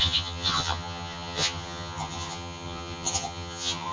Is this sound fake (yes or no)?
yes